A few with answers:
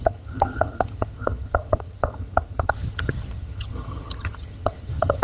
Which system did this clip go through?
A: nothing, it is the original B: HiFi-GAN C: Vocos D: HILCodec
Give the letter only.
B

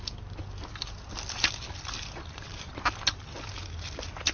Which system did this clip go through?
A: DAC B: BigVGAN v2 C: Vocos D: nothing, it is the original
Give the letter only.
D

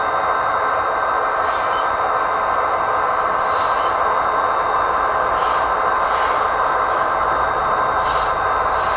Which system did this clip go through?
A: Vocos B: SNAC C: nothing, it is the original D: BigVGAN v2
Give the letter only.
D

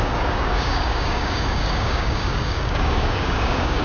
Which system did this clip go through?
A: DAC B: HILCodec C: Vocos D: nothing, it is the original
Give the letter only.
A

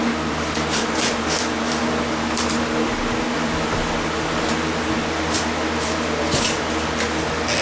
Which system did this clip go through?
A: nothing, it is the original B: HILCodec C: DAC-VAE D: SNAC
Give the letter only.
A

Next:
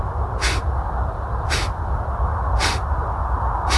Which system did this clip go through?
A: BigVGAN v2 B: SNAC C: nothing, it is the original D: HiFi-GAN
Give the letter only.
C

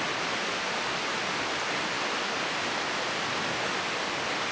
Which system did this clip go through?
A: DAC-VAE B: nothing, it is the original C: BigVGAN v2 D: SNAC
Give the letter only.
B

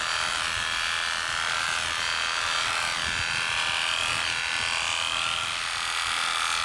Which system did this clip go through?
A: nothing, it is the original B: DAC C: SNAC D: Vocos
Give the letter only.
A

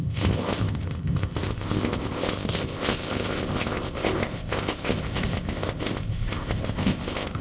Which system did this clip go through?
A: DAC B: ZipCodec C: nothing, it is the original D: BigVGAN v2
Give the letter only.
B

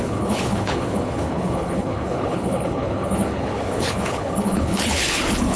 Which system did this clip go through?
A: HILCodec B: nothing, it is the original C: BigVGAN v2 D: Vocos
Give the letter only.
A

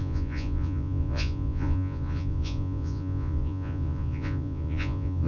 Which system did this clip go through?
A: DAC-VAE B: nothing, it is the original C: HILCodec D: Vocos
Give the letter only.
D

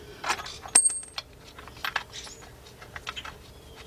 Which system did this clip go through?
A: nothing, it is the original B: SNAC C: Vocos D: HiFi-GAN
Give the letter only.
A